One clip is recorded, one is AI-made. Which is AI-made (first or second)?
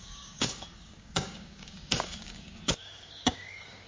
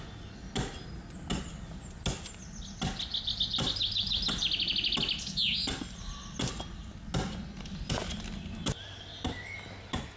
first